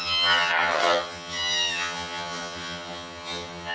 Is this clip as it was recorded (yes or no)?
no